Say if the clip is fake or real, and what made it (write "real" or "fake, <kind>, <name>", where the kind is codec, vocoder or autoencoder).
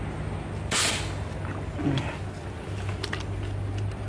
real